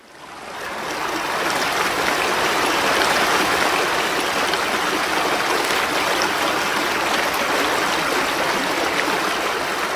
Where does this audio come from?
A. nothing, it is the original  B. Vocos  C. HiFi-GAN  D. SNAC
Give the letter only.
A